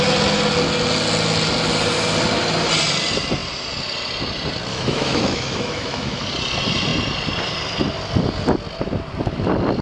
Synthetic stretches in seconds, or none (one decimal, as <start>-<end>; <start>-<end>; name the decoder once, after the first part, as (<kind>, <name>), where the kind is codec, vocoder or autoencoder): 4.7-6.2 (autoencoder, DAC-VAE)